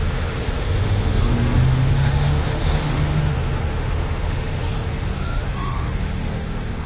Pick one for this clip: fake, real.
fake